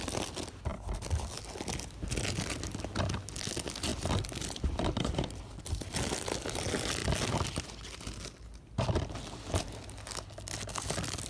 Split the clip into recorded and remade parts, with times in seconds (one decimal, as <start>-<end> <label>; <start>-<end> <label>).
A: 0.0-3.9 recorded; 3.9-5.4 remade; 5.4-11.3 recorded